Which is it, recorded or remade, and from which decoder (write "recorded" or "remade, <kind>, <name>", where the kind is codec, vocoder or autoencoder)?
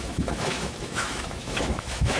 remade, autoencoder, DAC-VAE